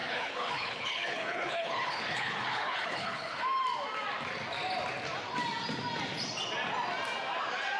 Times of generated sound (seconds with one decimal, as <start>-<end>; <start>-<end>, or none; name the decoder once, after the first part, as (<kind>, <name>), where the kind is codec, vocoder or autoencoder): 0.0-3.4 (codec, HILCodec)